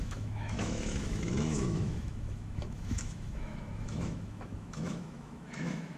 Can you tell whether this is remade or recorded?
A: remade